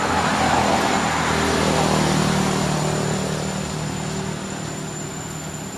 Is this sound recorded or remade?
recorded